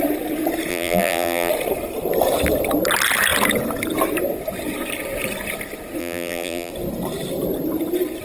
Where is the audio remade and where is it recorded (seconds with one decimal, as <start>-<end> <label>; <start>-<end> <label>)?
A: 0.0-0.7 recorded; 0.7-1.5 remade; 1.5-6.0 recorded; 6.0-6.7 remade; 6.7-8.2 recorded